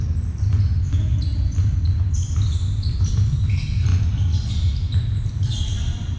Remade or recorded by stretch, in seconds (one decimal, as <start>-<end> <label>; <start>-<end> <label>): 0.0-6.2 recorded